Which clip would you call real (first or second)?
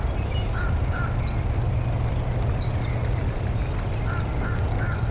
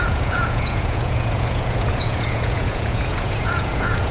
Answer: first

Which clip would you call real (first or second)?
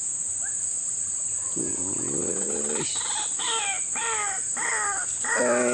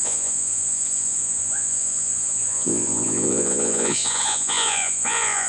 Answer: first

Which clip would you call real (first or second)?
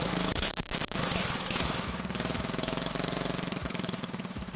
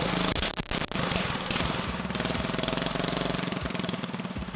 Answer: second